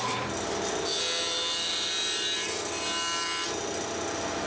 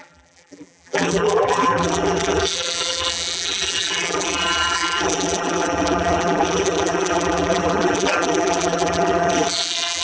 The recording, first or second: first